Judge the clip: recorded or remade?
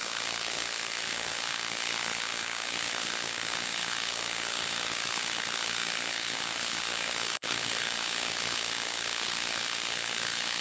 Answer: remade